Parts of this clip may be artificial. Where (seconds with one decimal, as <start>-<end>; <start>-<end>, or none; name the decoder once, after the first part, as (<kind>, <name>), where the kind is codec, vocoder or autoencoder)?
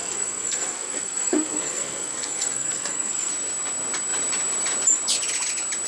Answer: 0.0-3.3 (codec, SNAC)